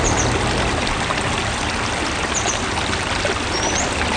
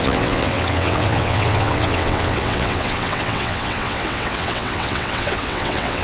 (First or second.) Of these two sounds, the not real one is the second